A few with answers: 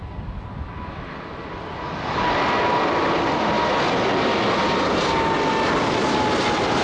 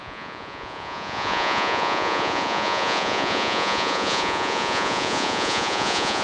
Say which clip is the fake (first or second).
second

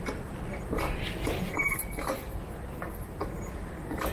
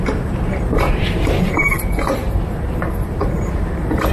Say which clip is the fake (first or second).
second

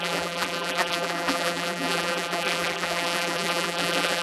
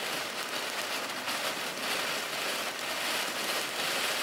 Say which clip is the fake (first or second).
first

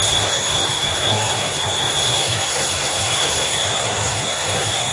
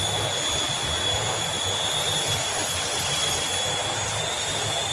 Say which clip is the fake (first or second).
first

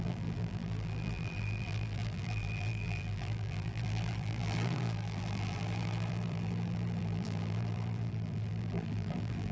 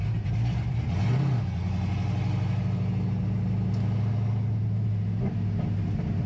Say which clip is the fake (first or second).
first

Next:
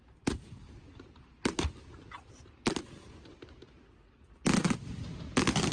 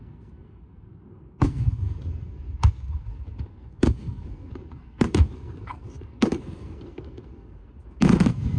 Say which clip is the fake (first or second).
second